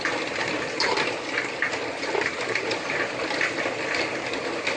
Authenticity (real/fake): real